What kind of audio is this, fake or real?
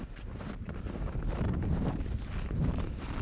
real